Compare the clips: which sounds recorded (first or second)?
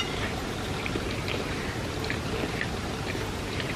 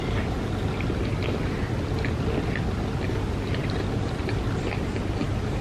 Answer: second